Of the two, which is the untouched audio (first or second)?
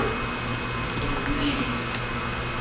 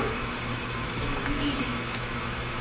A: first